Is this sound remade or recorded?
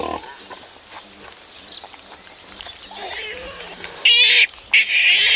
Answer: recorded